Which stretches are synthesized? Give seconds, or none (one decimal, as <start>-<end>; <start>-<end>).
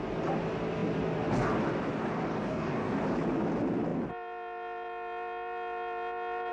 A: 2.3-3.0